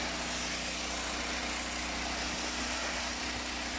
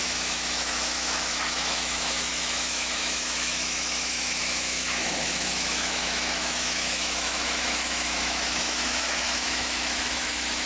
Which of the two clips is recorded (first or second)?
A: first